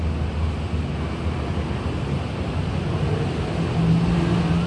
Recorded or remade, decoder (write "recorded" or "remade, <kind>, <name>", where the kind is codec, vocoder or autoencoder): recorded